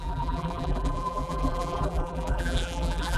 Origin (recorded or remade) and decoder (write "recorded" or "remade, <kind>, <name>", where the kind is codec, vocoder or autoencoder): remade, vocoder, BigVGAN v2